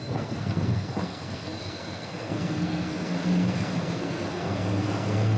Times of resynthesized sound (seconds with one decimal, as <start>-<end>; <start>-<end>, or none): 0.0-5.4